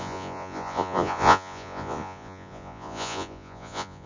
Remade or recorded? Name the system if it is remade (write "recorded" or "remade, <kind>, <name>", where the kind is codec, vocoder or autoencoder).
remade, vocoder, Vocos